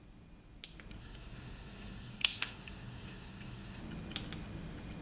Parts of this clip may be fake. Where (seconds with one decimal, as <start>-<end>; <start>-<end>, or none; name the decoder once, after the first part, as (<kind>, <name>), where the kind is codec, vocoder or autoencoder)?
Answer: 1.0-3.8 (codec, SNAC)